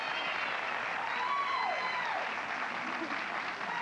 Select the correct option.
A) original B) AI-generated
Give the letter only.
A